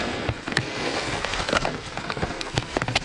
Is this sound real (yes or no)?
no